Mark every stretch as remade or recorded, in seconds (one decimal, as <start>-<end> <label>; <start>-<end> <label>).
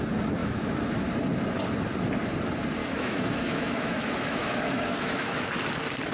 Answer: 0.0-0.4 recorded; 0.4-1.1 remade; 1.1-2.8 recorded; 2.8-5.5 remade; 5.5-6.1 recorded